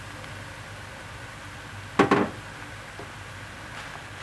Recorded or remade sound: recorded